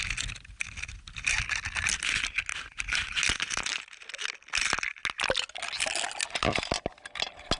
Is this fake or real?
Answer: real